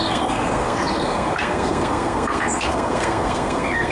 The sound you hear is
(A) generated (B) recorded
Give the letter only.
A